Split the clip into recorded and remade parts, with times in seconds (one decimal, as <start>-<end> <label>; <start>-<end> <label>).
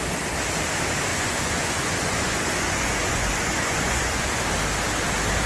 0.0-1.1 recorded; 1.1-4.4 remade; 4.4-5.5 recorded